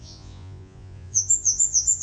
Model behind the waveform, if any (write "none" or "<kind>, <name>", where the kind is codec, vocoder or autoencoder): vocoder, Vocos